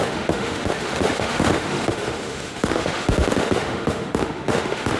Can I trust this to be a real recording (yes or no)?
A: no